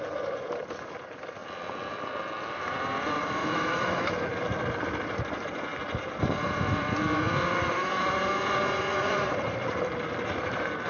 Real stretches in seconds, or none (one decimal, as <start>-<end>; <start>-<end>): 0.0-3.4; 4.1-10.9